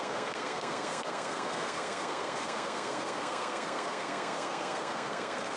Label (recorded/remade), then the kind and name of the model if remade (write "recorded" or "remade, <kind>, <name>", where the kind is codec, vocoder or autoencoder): remade, codec, SNAC